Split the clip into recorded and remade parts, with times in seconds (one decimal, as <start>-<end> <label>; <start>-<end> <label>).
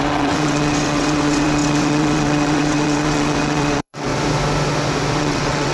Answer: 0.0-4.1 remade; 4.1-5.2 recorded; 5.2-5.7 remade